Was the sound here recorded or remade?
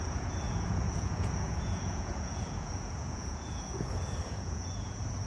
remade